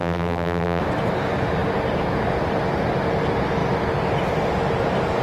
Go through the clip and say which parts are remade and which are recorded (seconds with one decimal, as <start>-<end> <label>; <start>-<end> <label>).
0.0-0.8 remade; 0.8-5.2 recorded